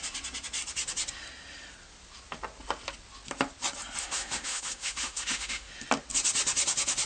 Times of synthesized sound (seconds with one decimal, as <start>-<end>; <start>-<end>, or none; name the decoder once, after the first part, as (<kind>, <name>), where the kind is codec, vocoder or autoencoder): 4.0-5.7 (autoencoder, DAC-VAE)